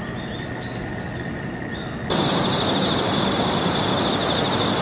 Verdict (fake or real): real